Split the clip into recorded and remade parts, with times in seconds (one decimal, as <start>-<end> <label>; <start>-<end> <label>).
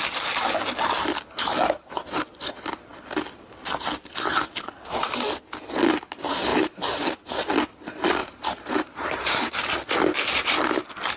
0.0-6.5 recorded; 6.5-7.3 remade; 7.3-8.2 recorded; 8.2-9.5 remade; 9.5-11.2 recorded